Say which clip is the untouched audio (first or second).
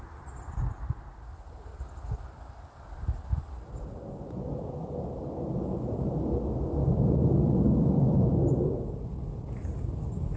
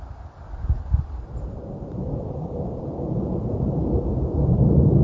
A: first